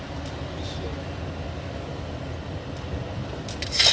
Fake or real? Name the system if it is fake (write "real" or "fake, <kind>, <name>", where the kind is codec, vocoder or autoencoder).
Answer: real